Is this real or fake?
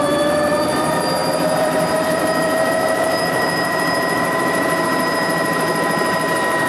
fake